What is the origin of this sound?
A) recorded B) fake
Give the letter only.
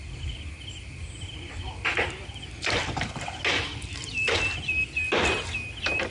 A